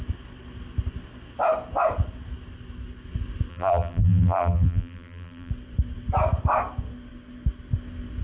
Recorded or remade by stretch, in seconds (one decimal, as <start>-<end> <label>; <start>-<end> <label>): 0.0-3.5 recorded; 3.5-5.5 remade; 5.5-8.2 recorded